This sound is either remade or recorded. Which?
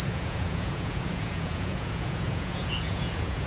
remade